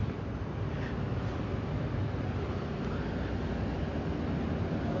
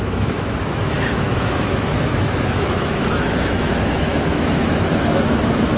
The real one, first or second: first